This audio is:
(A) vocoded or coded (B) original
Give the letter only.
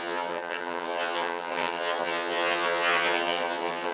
A